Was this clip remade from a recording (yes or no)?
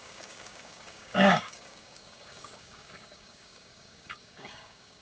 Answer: yes